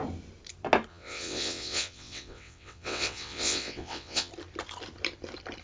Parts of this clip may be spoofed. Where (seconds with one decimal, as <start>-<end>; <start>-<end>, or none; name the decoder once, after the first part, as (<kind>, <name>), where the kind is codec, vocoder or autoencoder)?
0.9-4.3 (vocoder, WaveNeXt)